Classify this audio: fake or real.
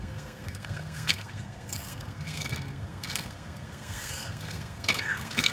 fake